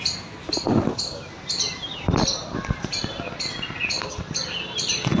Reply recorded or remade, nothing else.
recorded